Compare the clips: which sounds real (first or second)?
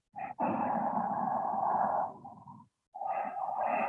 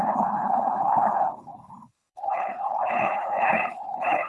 first